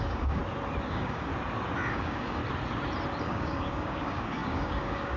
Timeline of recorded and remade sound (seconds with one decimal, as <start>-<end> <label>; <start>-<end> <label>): 0.0-0.4 remade; 0.4-0.9 recorded; 0.9-1.3 remade; 1.3-1.9 recorded; 1.9-2.4 remade; 2.4-3.2 recorded; 3.2-5.2 remade